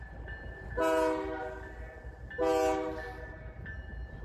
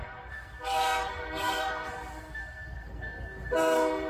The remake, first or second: second